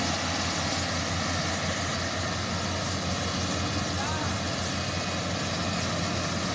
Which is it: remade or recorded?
recorded